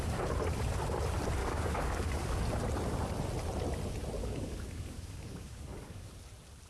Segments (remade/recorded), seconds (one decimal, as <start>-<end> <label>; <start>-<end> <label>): 0.0-1.4 recorded; 1.4-2.4 remade; 2.4-4.2 recorded; 4.2-6.1 remade; 6.1-6.7 recorded